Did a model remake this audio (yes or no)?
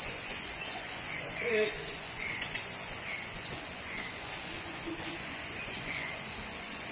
yes